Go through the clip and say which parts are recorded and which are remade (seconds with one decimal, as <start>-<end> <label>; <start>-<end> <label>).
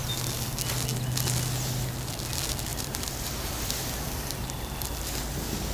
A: 0.0-2.7 recorded; 2.7-3.7 remade; 3.7-5.7 recorded